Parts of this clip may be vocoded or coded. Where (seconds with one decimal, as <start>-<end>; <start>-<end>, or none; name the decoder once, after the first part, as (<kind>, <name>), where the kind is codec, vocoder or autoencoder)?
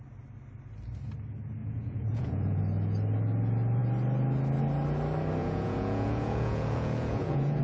1.6-2.6 (vocoder, Vocos); 5.4-7.6